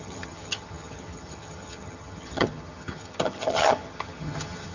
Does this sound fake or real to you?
fake